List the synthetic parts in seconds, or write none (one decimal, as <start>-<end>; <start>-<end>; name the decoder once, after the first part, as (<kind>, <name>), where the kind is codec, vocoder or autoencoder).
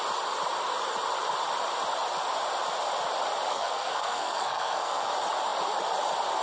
3.5-5.1 (codec, SNAC)